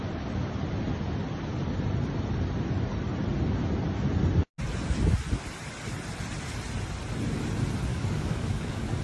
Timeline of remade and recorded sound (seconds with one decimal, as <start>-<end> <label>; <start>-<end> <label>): 0.0-7.9 recorded; 7.9-9.0 remade